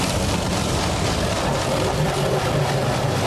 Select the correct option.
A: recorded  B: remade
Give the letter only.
A